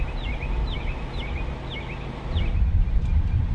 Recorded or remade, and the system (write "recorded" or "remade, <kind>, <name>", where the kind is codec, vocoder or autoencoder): recorded